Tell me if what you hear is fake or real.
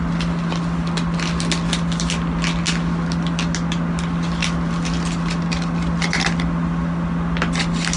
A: real